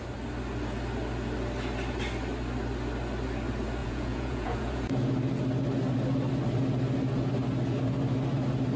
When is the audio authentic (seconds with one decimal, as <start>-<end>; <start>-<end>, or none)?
0.0-3.8; 4.9-8.8